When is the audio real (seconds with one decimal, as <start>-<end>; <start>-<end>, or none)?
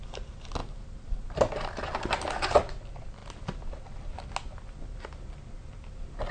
0.0-6.3